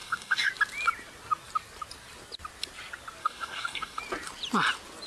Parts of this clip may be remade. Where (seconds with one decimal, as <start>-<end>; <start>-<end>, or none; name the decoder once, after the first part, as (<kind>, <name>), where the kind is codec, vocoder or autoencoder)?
0.0-0.5 (codec, DAC); 3.2-4.0